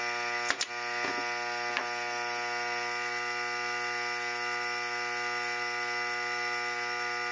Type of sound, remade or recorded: recorded